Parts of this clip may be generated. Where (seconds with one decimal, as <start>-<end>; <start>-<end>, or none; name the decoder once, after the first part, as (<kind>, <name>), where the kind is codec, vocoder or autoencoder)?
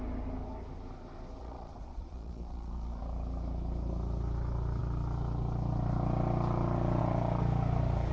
1.4-3.0 (vocoder, Vocos)